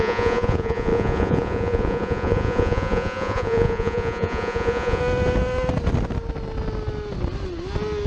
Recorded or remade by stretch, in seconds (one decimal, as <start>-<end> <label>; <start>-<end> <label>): 0.0-5.0 remade; 5.0-8.1 recorded